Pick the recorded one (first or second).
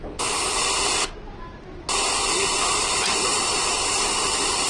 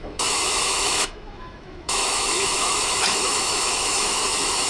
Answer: first